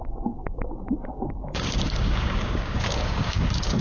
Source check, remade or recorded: remade